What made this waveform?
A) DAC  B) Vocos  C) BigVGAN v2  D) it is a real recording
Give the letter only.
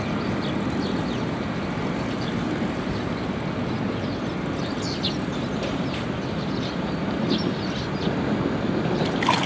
D